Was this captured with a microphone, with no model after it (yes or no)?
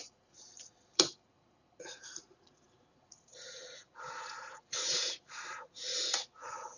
no